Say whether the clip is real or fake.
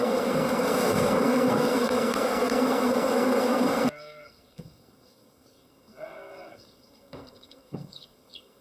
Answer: fake